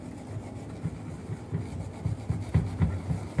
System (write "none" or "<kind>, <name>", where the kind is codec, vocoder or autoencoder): none